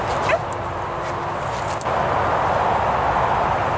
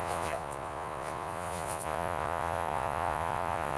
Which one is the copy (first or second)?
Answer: second